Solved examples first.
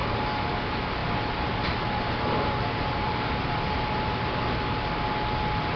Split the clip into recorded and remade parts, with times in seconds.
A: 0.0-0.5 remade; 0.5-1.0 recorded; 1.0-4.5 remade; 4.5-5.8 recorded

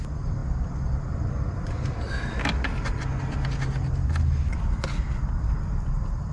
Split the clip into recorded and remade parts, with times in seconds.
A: 0.0-6.3 recorded

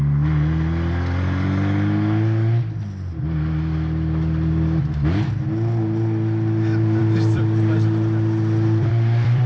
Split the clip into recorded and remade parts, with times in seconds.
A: 0.0-7.0 recorded; 7.0-9.5 remade

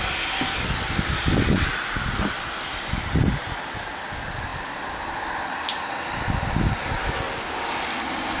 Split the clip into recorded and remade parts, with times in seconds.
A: 0.0-8.4 recorded